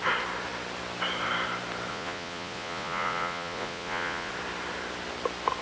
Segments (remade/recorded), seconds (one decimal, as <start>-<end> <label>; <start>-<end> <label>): 0.0-1.9 recorded; 1.9-4.3 remade; 4.3-5.6 recorded